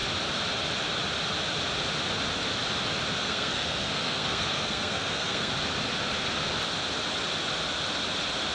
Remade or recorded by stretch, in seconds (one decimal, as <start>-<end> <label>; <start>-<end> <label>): 0.0-3.2 recorded; 3.2-5.5 remade; 5.5-8.5 recorded